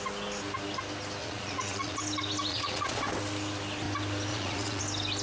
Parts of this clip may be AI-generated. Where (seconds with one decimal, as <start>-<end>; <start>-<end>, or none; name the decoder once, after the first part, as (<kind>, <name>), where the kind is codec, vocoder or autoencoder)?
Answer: 1.2-2.0 (vocoder, Vocos); 2.5-3.0; 4.3-4.8